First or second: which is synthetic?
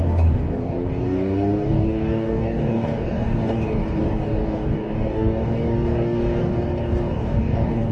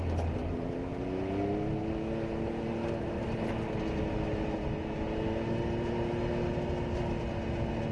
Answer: first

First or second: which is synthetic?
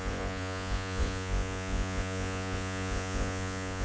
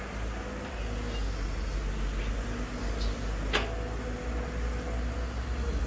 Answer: first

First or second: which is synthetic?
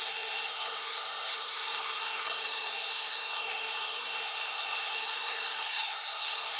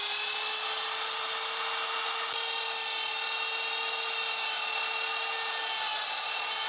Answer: first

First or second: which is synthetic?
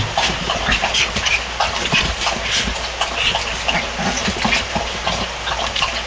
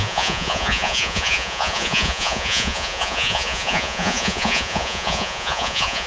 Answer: second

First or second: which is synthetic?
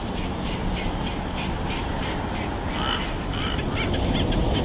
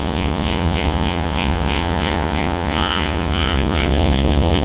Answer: second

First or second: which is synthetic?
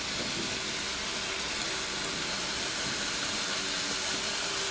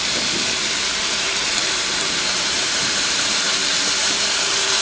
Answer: second